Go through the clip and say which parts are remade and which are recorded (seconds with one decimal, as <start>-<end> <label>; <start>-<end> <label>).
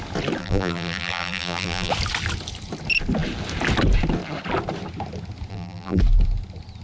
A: 0.0-0.4 recorded; 0.4-1.9 remade; 1.9-5.5 recorded; 5.5-6.0 remade; 6.0-6.8 recorded